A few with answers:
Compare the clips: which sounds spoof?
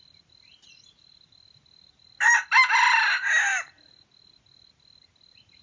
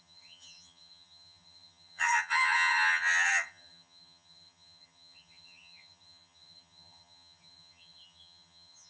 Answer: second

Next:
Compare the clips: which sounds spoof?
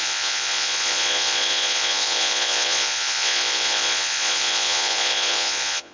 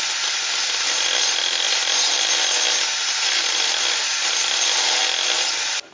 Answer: first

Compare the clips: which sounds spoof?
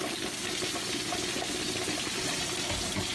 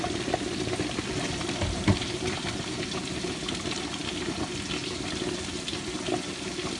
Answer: second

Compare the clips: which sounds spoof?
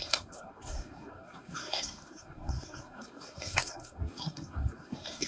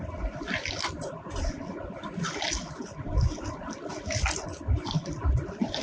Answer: first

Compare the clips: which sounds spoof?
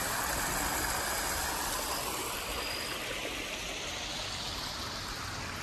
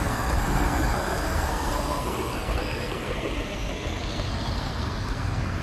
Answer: second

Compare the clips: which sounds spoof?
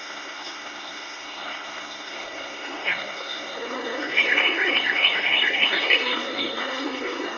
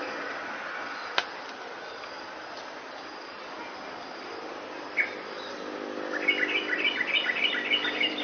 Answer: first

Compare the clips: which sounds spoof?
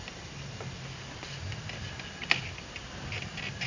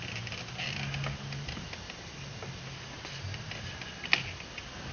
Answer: first